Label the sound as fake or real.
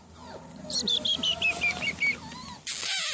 real